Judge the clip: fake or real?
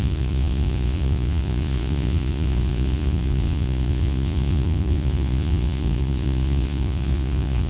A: fake